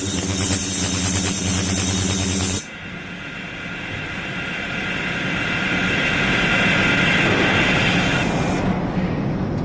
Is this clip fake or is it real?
real